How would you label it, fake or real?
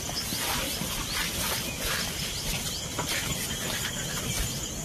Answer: real